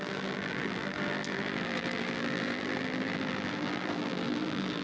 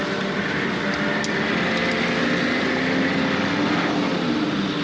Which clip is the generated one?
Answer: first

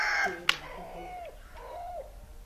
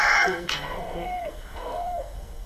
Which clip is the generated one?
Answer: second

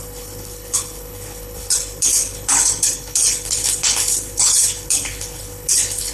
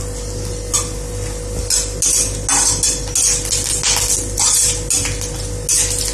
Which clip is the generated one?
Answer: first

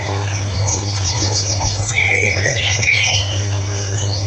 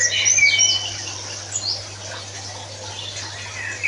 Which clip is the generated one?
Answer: first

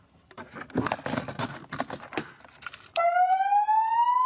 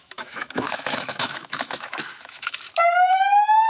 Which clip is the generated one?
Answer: second